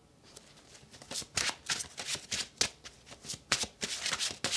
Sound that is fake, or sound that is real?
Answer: real